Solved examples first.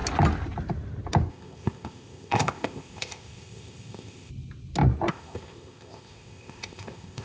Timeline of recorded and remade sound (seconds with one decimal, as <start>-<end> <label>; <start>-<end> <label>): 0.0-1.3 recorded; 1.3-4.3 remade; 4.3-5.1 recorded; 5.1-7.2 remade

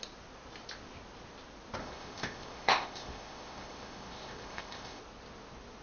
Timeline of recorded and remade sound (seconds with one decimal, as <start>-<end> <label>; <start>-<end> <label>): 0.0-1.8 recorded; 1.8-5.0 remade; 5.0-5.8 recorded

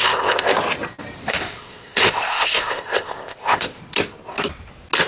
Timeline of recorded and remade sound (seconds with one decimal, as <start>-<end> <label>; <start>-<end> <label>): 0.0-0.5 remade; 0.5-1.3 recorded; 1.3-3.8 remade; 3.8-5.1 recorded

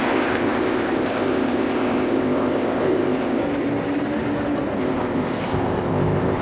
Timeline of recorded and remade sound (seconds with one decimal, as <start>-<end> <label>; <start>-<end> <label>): 0.0-3.4 remade; 3.4-4.8 recorded; 4.8-6.4 remade

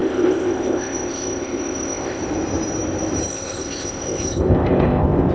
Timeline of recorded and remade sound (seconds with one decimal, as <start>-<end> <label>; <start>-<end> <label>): 0.0-2.2 remade; 2.2-3.3 recorded; 3.3-5.3 remade